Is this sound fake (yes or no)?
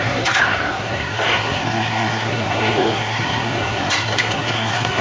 yes